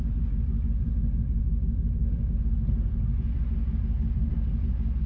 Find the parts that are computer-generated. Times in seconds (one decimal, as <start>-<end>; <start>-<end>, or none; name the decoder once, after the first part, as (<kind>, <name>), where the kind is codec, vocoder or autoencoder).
none